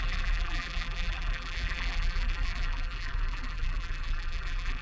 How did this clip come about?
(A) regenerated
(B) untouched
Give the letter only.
A